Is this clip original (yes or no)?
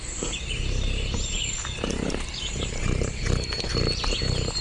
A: yes